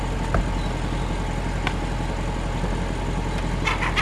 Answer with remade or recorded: recorded